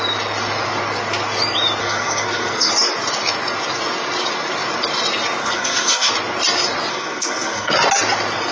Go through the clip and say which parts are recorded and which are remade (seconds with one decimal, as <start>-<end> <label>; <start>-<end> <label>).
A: 0.0-1.8 recorded; 1.8-2.7 remade; 2.7-5.4 recorded; 5.4-6.1 remade; 6.1-6.9 recorded; 6.9-7.7 remade; 7.7-8.5 recorded